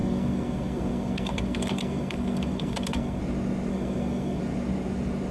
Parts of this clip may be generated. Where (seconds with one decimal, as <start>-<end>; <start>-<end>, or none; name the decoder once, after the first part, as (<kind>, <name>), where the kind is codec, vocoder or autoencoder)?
0.0-3.2 (codec, SNAC); 3.7-4.4